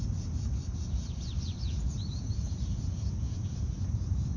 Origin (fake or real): fake